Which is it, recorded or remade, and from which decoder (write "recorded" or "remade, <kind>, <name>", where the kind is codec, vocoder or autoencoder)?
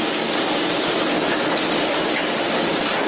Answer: recorded